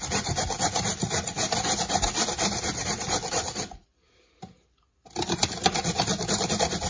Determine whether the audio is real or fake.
real